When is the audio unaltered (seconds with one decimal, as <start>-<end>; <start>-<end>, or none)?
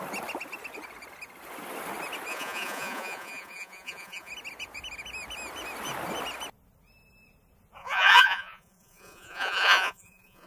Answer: 0.0-2.3; 4.3-7.8